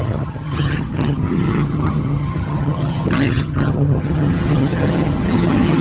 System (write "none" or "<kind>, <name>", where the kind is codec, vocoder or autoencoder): vocoder, HiFi-GAN